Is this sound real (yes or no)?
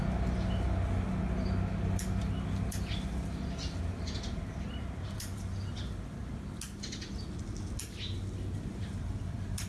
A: yes